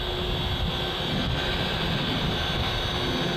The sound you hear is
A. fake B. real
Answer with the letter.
B